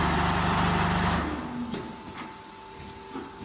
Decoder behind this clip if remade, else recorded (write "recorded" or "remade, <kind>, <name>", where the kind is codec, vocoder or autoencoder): recorded